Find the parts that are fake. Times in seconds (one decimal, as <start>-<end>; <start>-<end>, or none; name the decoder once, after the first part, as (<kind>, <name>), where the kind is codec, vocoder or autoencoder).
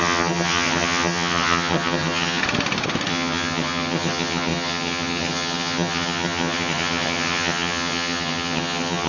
0.0-2.4 (vocoder, HiFi-GAN); 3.1-9.1